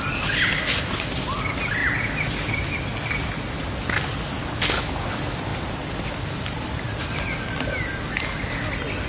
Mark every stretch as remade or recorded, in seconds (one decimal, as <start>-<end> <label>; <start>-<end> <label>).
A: 0.0-5.5 recorded; 5.5-7.3 remade; 7.3-9.1 recorded